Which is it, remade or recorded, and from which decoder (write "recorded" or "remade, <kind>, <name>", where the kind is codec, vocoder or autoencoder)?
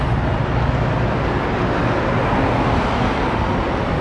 recorded